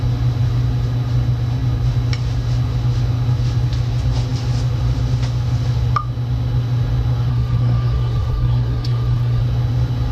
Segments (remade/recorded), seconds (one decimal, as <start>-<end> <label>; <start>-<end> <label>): 0.0-7.3 recorded; 7.3-9.4 remade; 9.4-10.1 recorded